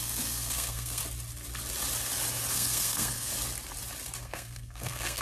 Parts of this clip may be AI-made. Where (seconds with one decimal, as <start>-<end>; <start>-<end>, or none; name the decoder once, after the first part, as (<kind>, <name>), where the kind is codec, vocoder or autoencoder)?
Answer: 0.0-1.0 (codec, SNAC); 2.5-3.3; 4.2-5.2